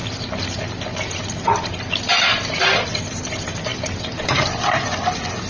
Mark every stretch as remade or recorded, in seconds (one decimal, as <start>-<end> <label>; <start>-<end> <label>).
0.0-0.7 recorded; 0.7-5.5 remade